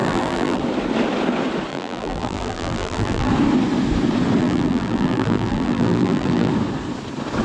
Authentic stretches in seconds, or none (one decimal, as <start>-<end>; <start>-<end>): 0.6-1.7; 3.3-4.4; 6.5-7.4